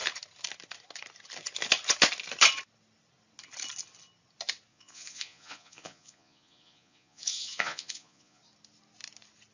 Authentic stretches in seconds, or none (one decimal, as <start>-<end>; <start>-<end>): 0.0-4.7; 8.4-9.5